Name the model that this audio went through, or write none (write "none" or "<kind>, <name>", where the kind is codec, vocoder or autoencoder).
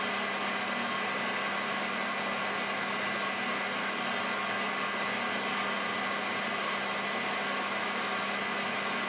none